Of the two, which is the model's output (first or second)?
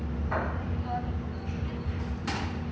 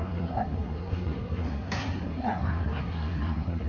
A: second